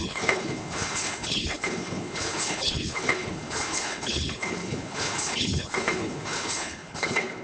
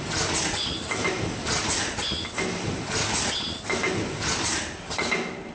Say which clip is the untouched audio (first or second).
second